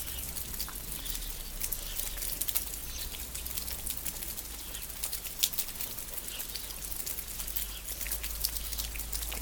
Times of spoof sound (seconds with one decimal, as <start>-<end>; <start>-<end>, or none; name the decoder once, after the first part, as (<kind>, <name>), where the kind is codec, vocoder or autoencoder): none